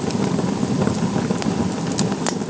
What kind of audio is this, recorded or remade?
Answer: recorded